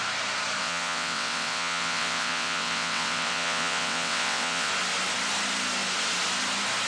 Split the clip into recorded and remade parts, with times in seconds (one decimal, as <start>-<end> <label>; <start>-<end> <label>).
0.0-0.6 recorded; 0.6-4.7 remade; 4.7-6.9 recorded